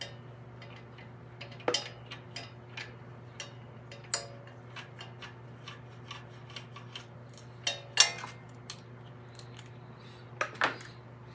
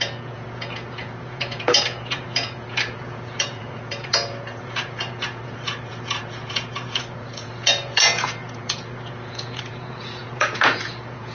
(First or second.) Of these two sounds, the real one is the first